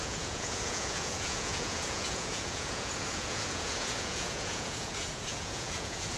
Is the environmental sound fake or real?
fake